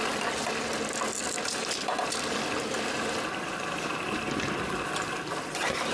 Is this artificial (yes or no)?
no